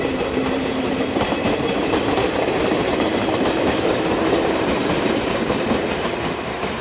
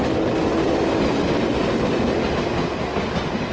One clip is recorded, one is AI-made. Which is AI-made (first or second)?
first